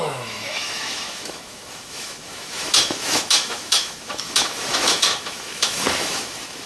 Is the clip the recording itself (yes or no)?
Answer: no